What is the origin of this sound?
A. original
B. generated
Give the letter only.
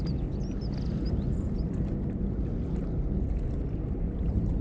A